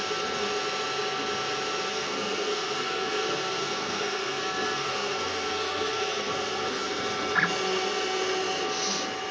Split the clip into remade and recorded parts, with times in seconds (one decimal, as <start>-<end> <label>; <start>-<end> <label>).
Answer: 0.0-1.9 recorded; 1.9-7.0 remade; 7.0-9.3 recorded